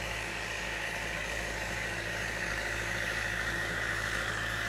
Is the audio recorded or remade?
remade